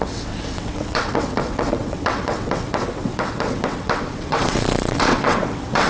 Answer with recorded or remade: remade